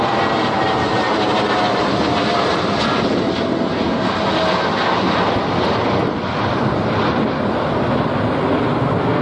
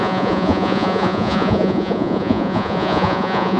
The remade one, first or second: second